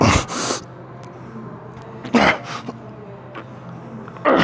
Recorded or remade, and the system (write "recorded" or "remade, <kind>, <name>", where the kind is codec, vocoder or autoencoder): recorded